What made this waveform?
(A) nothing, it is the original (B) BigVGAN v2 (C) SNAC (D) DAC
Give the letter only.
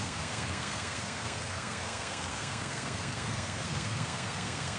C